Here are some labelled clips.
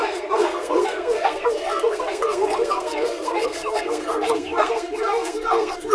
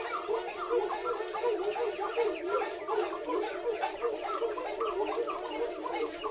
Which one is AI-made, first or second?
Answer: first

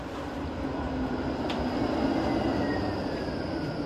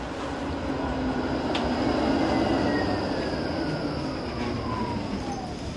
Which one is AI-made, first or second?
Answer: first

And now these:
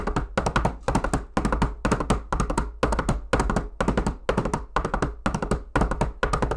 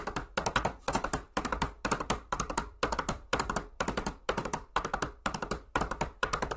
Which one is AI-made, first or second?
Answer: second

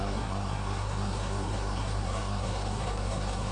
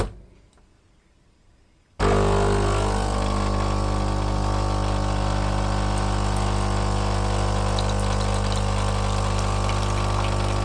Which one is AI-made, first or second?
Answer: first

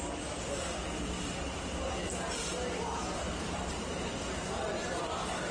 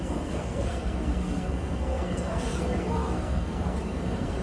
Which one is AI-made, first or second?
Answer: second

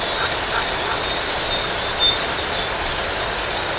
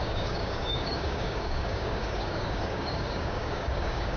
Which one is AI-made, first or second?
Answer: second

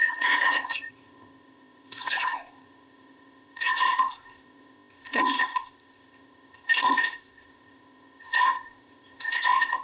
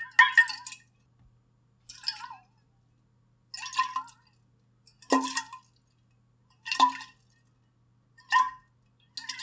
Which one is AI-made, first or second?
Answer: first